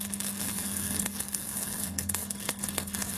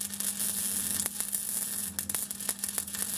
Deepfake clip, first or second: first